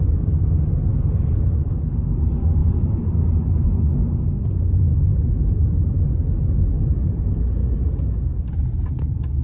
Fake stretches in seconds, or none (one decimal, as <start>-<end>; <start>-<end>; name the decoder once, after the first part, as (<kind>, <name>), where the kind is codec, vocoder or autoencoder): 0.9-2.0 (vocoder, Vocos); 2.6-3.3; 7.6-8.2